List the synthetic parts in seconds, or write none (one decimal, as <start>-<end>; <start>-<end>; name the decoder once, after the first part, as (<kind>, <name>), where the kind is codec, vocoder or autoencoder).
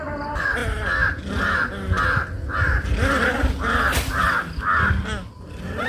none